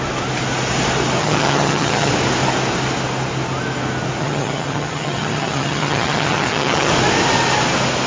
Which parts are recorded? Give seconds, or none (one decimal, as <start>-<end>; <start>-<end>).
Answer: 0.0-1.2; 2.1-4.2; 6.9-8.1